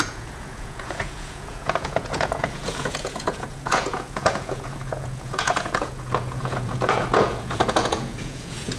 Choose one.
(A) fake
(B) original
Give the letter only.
A